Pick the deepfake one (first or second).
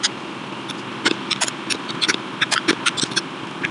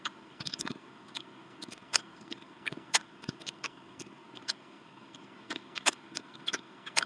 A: second